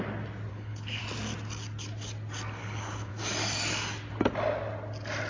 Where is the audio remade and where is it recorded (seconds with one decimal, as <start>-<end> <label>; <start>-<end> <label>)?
0.0-0.5 recorded; 0.5-1.0 remade; 1.0-2.6 recorded; 2.6-3.1 remade; 3.1-5.3 recorded